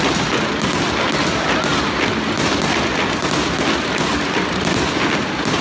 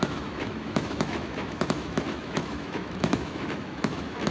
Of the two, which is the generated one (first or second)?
second